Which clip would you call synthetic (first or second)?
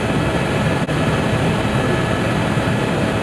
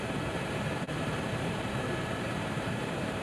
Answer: second